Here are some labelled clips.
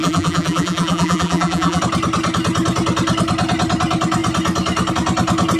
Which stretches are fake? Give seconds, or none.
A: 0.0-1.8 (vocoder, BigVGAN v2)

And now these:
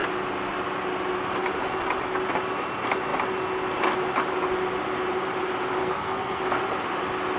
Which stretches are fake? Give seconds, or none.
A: 5.8-6.4 (codec, SNAC)

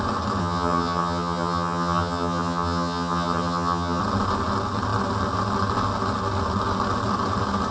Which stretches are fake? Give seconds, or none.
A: 0.4-4.0 (vocoder, HiFi-GAN)

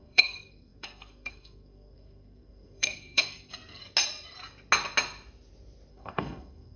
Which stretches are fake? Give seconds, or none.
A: 0.0-3.8 (codec, SNAC); 5.9-6.8

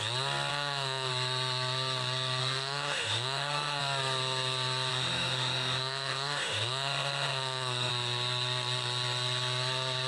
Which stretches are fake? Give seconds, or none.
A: 0.5-1.1 (autoencoder, DAC-VAE); 2.4-3.8; 4.9-7.9

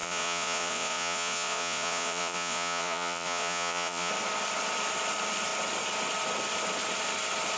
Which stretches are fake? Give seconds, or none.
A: 0.0-4.1 (vocoder, Vocos)